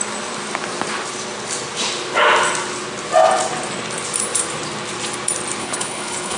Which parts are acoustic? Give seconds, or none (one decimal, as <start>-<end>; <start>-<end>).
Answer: 0.0-5.6